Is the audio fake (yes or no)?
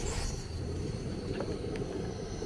yes